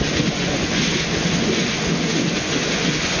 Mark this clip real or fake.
fake